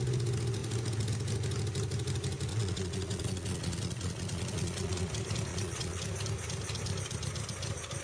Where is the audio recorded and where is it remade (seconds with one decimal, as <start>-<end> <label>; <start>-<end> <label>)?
0.0-2.5 recorded; 2.5-5.1 remade; 5.1-5.5 recorded; 5.5-6.0 remade; 6.0-8.0 recorded